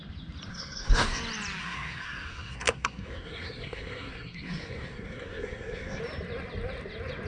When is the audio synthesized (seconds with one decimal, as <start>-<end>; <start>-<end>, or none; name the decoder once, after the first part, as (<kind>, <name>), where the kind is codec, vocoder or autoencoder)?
0.5-1.2 (codec, SNAC); 1.6-6.0